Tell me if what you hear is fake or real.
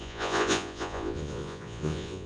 fake